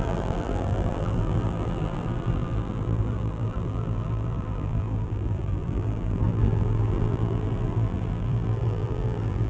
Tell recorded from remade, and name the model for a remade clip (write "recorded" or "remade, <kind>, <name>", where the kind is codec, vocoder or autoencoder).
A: remade, vocoder, BigVGAN v2